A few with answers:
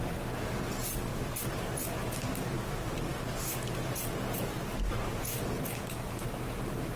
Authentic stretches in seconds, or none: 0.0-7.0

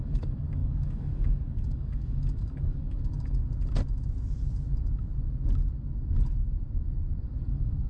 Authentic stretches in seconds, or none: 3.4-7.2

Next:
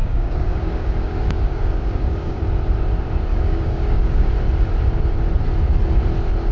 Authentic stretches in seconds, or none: 2.4-3.3; 4.3-6.5